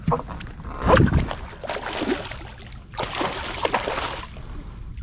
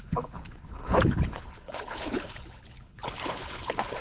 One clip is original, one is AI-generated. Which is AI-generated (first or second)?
second